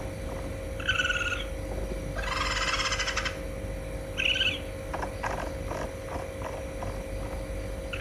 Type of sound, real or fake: real